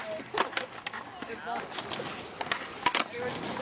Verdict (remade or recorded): recorded